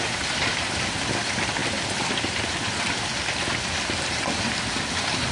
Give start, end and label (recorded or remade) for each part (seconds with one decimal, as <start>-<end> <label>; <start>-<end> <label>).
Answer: 0.0-1.6 recorded; 1.6-3.2 remade; 3.2-5.3 recorded